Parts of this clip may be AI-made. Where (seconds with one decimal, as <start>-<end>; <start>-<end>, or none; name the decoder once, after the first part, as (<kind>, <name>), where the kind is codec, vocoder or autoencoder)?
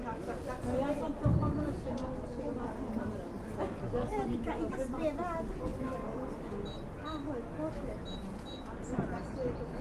4.1-5.0 (vocoder, BigVGAN v2)